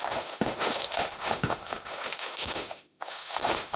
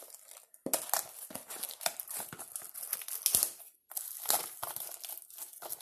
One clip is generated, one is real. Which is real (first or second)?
second